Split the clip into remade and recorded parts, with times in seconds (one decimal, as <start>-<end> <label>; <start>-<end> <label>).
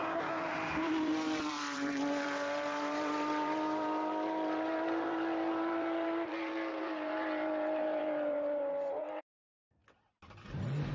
0.0-9.8 remade; 9.8-10.9 recorded